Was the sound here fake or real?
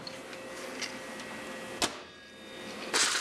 real